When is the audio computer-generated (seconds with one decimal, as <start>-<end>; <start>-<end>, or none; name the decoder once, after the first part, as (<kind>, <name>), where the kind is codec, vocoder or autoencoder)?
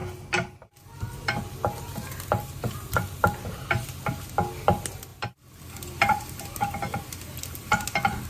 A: none